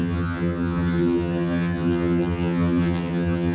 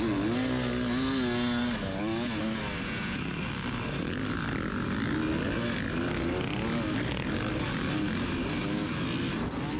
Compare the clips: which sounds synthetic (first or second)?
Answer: first